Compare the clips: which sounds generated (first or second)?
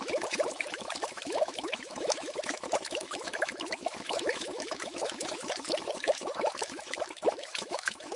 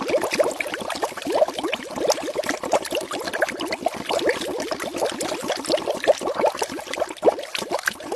first